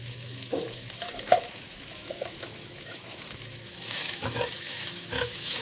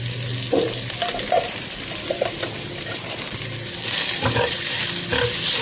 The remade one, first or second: first